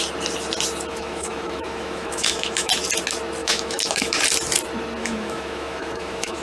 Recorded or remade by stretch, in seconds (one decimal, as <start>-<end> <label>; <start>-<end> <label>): 0.0-0.9 recorded; 0.9-2.7 remade; 2.7-3.4 recorded; 3.4-4.2 remade; 4.2-5.0 recorded; 5.0-6.4 remade